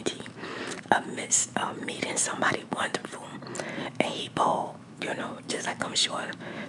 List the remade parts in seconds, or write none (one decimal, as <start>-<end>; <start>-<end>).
0.0-1.6; 2.5-3.0; 3.9-6.7